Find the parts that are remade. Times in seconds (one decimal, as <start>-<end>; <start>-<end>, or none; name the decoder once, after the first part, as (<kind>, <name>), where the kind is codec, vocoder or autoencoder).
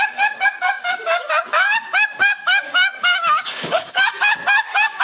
0.0-5.0 (codec, DAC)